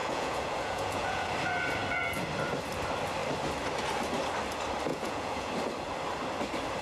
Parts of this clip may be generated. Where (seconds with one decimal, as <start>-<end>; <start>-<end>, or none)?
0.0-1.3; 4.9-5.5